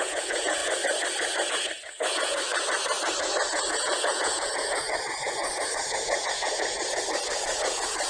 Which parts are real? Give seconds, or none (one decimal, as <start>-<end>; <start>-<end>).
0.6-1.5; 2.5-3.5